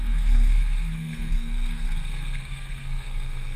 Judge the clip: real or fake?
fake